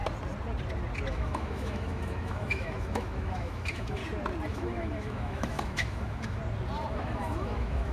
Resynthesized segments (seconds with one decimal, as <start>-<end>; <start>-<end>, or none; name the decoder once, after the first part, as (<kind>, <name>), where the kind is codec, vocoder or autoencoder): 1.1-4.0 (autoencoder, DAC-VAE); 4.5-6.4; 6.9-7.9